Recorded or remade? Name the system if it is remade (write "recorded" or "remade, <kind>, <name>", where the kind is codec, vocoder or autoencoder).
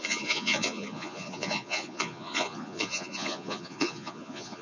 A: remade, vocoder, Vocos